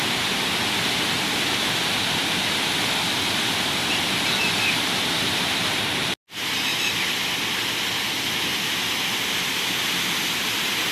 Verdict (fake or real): real